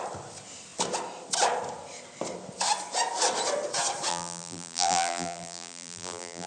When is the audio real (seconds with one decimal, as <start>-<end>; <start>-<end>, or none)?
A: 0.0-4.1